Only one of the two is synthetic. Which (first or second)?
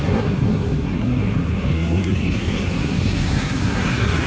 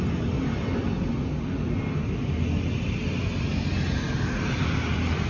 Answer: first